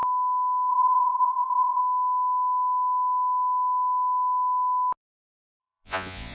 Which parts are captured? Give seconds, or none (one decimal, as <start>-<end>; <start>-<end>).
0.0-0.7; 1.8-5.6